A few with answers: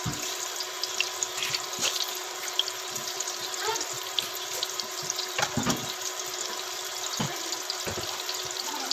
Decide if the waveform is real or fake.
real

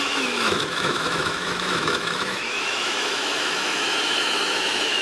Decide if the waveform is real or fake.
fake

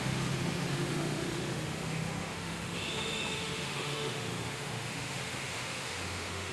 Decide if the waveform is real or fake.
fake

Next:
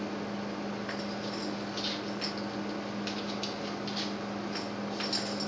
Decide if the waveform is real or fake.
real